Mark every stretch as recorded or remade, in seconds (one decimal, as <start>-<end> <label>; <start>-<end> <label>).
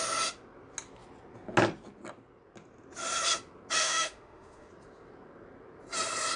0.0-3.8 recorded; 3.8-4.7 remade; 4.7-6.4 recorded